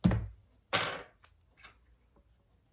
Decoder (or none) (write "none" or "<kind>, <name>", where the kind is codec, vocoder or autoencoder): none